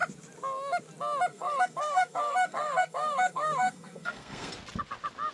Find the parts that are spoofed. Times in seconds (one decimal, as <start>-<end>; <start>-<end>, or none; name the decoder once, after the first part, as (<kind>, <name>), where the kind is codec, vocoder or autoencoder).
1.3-4.5 (codec, SNAC)